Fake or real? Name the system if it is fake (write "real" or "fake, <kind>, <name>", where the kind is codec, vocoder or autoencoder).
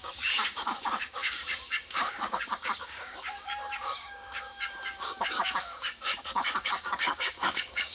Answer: fake, codec, DAC